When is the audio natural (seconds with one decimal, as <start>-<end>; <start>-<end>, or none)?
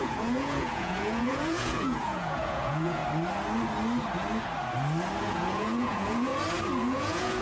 3.0-5.2; 6.3-6.8